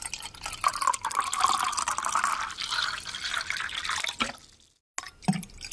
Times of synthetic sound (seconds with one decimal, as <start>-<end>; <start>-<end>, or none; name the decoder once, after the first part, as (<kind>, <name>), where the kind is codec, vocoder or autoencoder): none